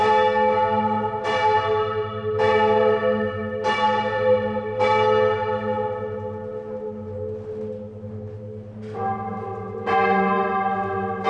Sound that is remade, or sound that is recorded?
recorded